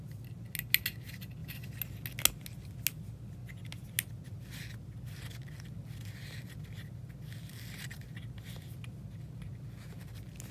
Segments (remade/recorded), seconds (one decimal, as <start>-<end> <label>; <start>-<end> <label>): 0.0-10.5 recorded